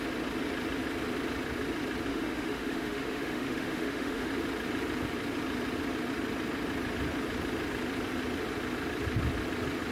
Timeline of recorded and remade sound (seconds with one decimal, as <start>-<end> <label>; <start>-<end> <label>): 0.0-2.1 recorded; 2.1-4.3 remade; 4.3-9.9 recorded